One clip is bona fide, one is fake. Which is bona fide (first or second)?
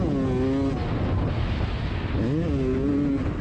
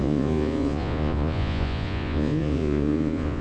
first